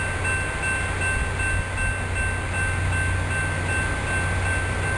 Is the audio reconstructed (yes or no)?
no